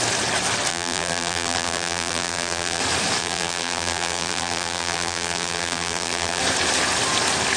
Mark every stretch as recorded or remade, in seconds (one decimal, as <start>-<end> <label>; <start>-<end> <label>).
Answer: 0.0-0.7 recorded; 0.7-2.8 remade; 2.8-3.2 recorded; 3.2-6.4 remade; 6.4-7.6 recorded